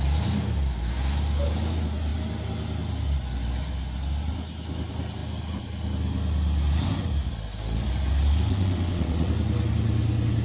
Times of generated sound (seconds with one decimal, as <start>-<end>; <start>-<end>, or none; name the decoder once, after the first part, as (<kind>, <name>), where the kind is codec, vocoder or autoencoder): 8.5-9.3 (vocoder, WaveNeXt)